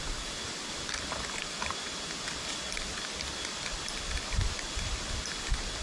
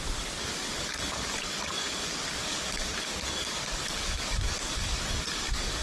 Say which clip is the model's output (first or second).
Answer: second